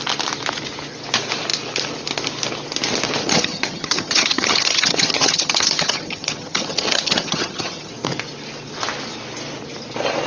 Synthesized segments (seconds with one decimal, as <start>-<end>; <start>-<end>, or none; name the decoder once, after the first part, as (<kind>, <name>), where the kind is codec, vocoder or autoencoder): 3.2-7.9 (vocoder, HiFi-GAN)